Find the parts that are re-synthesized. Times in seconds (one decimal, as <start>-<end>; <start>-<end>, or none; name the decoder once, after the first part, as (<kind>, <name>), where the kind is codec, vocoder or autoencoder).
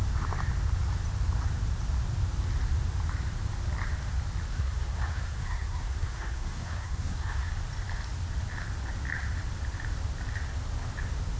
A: 4.5-7.5 (codec, SNAC)